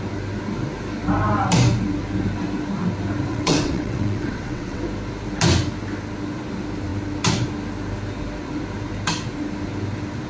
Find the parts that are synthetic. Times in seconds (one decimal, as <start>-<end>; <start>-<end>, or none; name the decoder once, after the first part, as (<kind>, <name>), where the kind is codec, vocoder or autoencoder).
3.3-4.8 (vocoder, WaveNeXt)